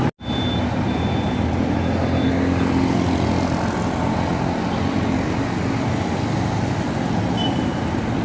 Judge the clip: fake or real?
real